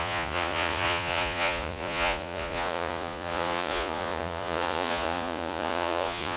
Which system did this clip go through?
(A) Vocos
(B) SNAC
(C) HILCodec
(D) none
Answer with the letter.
A